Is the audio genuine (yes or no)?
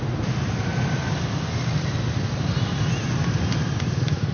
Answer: yes